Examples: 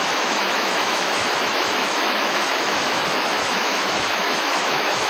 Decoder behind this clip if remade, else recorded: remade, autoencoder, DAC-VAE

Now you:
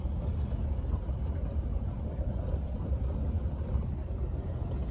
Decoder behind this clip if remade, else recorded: recorded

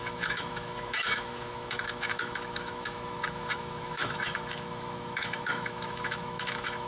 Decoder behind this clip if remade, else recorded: remade, autoencoder, DAC-VAE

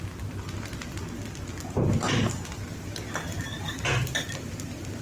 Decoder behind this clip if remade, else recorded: recorded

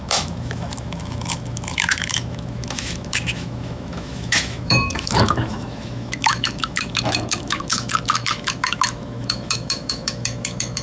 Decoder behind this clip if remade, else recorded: remade, autoencoder, DAC-VAE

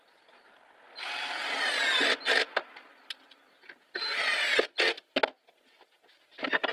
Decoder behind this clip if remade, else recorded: recorded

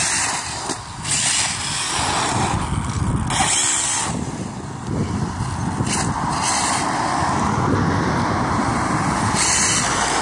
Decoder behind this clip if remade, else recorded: recorded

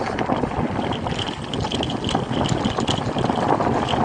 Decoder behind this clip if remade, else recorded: recorded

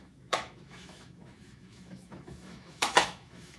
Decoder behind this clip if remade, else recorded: remade, autoencoder, DAC-VAE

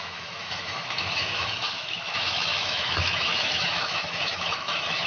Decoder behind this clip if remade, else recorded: remade, autoencoder, DAC-VAE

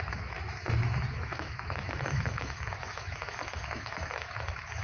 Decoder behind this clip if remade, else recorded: remade, autoencoder, DAC-VAE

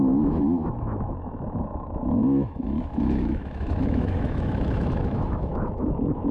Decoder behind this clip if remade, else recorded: remade, autoencoder, DAC-VAE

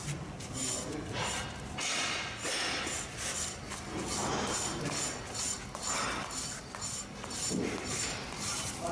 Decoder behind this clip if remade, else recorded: recorded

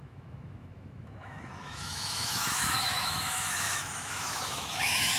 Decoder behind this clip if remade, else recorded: remade, autoencoder, DAC-VAE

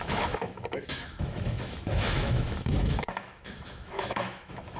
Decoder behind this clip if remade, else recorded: remade, autoencoder, DAC-VAE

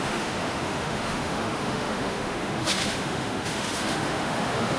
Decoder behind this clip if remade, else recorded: remade, autoencoder, DAC-VAE